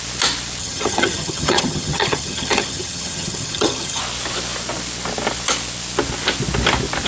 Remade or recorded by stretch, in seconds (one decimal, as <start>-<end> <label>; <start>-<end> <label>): 0.0-0.6 recorded; 0.6-4.0 remade; 4.0-7.1 recorded